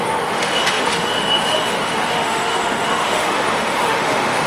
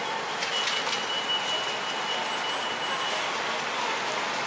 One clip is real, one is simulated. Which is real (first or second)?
second